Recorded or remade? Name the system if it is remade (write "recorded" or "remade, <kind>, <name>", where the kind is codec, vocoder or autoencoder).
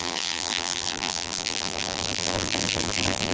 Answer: remade, vocoder, BigVGAN v2